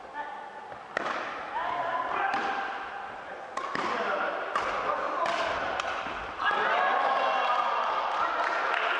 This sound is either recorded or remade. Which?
recorded